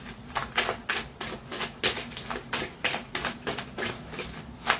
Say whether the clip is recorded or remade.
recorded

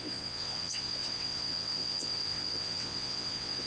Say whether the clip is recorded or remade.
remade